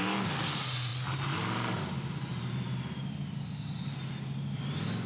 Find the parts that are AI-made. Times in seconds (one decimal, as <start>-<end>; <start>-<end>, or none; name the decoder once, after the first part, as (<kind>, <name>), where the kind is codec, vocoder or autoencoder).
none